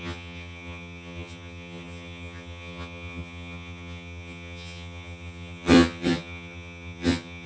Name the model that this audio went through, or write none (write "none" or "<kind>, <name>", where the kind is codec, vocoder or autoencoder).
vocoder, HiFi-GAN